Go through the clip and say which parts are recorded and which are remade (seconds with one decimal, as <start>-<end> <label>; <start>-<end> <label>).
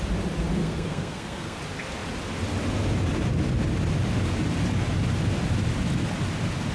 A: 0.0-0.6 recorded; 0.6-1.6 remade; 1.6-6.7 recorded